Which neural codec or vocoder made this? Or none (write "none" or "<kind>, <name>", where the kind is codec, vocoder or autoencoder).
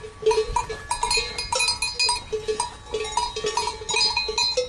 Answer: none